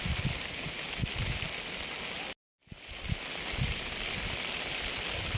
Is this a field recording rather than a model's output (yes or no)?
yes